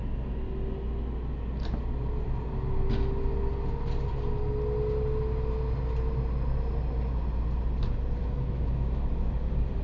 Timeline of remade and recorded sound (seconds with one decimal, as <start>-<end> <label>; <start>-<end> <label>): 0.0-8.2 recorded; 8.2-9.1 remade; 9.1-9.8 recorded